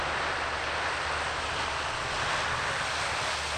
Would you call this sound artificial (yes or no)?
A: no